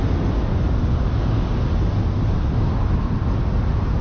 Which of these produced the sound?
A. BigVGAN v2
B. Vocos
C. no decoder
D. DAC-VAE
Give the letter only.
C